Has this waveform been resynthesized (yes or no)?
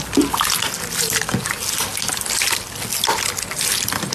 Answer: no